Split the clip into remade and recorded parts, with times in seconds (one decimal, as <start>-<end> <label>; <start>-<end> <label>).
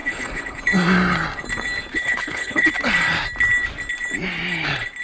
0.0-0.6 remade; 0.6-1.9 recorded; 1.9-2.7 remade; 2.7-5.0 recorded